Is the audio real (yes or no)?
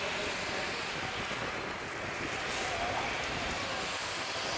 yes